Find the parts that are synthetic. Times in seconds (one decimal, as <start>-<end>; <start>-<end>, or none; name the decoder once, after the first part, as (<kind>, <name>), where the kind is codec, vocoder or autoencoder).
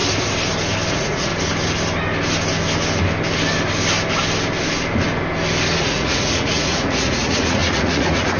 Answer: 0.9-1.3 (vocoder, Vocos); 5.8-8.4